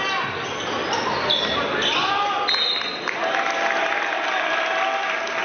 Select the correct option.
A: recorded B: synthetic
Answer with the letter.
A